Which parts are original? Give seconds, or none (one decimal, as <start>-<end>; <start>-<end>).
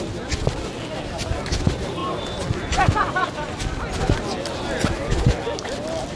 0.0-6.2